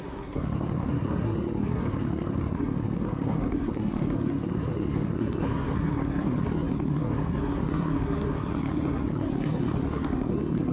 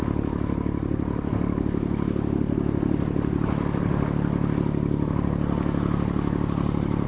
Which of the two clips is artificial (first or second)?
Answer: first